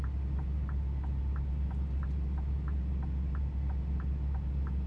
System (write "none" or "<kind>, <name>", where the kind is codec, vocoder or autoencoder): none